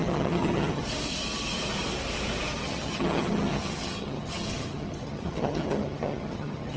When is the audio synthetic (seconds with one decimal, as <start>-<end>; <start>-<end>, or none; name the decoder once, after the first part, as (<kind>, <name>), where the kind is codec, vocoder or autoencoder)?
0.0-0.8 (vocoder, HiFi-GAN); 2.6-6.8